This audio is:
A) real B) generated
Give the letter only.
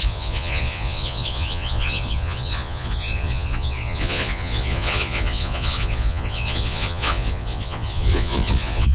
B